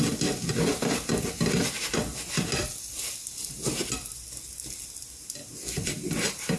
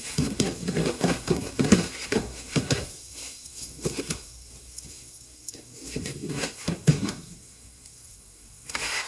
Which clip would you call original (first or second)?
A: first